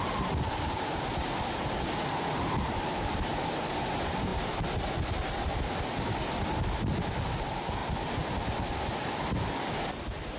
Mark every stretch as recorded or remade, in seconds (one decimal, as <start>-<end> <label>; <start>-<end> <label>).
0.0-10.4 recorded